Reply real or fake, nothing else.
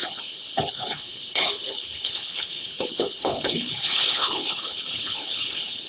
fake